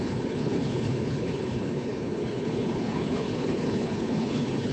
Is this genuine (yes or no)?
no